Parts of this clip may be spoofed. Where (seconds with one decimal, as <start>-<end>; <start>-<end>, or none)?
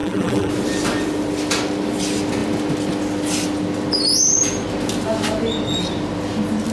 0.0-0.5